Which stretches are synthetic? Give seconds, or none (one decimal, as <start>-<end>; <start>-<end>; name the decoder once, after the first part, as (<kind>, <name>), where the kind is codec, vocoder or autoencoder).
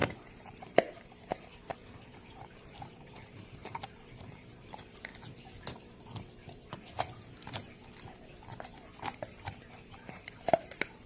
0.0-5.1 (vocoder, BigVGAN v2); 9.8-11.1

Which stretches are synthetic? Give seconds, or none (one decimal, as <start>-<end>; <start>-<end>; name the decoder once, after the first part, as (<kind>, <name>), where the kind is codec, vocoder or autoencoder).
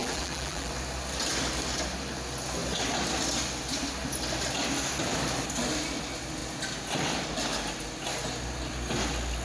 0.0-0.7 (vocoder, BigVGAN v2)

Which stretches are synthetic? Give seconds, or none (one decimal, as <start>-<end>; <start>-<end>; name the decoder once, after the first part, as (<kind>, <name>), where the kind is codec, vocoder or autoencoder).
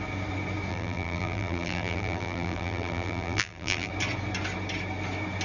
0.7-3.9 (vocoder, BigVGAN v2)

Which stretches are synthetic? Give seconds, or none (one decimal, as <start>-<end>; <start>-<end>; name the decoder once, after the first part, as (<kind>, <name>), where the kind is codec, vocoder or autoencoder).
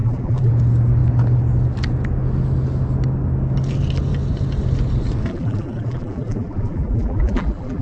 0.0-0.5 (vocoder, BigVGAN v2); 5.3-7.8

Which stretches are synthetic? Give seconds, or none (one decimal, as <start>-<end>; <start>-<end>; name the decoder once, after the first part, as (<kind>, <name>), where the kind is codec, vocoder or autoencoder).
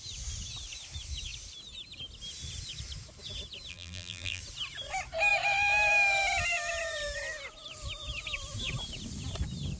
3.7-4.4 (vocoder, BigVGAN v2)